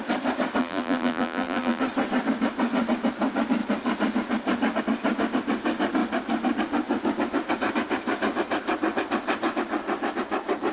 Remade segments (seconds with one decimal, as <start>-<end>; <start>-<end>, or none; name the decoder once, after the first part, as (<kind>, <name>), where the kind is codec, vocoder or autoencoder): 0.6-1.8 (vocoder, BigVGAN v2)